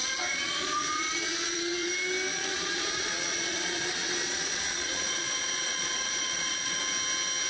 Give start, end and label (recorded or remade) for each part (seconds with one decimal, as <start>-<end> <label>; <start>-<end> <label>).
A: 0.0-1.9 remade; 1.9-2.3 recorded; 2.3-6.8 remade; 6.8-7.5 recorded